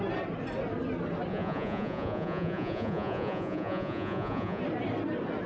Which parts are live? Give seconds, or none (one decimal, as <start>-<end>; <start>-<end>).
0.0-1.3; 4.6-5.5